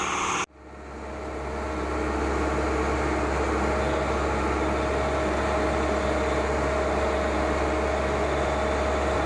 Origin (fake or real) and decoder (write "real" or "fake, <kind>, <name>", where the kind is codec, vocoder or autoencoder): real